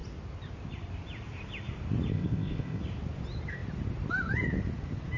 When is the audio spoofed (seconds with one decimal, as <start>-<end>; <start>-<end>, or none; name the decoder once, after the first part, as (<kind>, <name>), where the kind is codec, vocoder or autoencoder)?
2.1-2.8 (codec, ZipCodec)